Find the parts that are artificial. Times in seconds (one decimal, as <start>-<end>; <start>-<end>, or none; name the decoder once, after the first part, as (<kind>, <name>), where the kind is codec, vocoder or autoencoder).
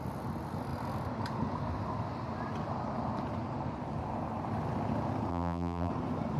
5.3-5.9 (vocoder, BigVGAN v2)